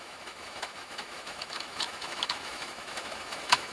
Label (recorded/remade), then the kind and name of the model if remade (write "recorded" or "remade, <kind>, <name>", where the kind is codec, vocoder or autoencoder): remade, autoencoder, DAC-VAE